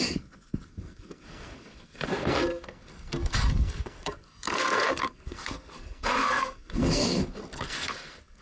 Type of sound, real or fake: fake